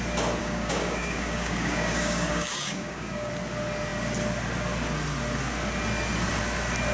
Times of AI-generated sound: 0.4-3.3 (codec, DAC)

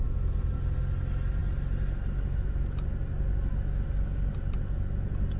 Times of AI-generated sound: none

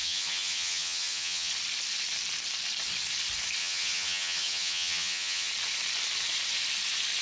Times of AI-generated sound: 0.0-1.5 (vocoder, HiFi-GAN); 3.6-5.5

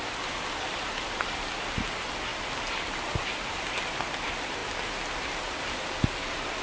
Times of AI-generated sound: none

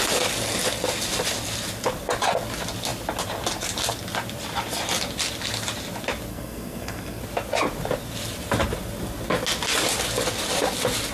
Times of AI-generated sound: 6.3-7.2 (codec, SNAC)

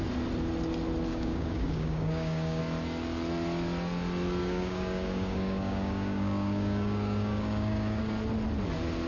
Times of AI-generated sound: 1.1-2.6 (codec, DAC); 4.4-8.0

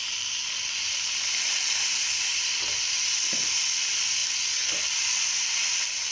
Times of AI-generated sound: none